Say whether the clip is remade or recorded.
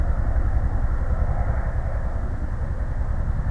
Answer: recorded